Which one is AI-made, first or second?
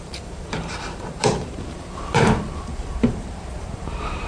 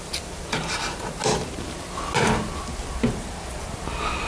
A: first